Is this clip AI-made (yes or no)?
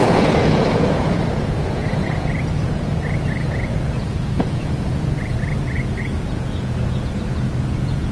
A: yes